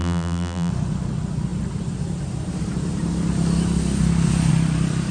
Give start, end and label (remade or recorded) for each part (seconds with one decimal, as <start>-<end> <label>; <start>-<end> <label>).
0.0-0.7 remade; 0.7-5.1 recorded